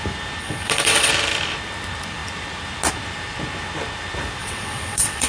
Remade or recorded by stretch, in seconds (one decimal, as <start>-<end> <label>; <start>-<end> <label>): 0.0-0.4 recorded; 0.4-1.1 remade; 1.1-4.4 recorded; 4.4-5.3 remade